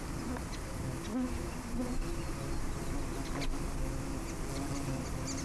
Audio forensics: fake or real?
real